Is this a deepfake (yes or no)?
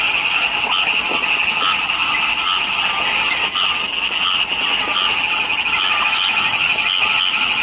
no